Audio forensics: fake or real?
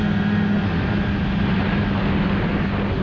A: real